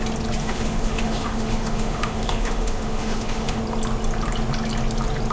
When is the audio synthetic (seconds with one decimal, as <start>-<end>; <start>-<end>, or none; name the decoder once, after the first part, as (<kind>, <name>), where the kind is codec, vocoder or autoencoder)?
0.4-3.6 (autoencoder, DAC-VAE)